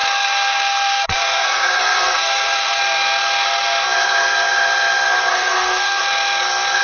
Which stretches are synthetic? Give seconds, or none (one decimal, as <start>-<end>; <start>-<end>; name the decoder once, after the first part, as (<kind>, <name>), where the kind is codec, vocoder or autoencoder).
0.0-2.8 (codec, SNAC); 5.3-6.0